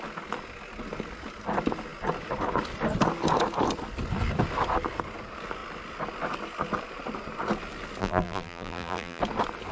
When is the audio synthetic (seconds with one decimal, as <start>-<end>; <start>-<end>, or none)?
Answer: 8.0-9.2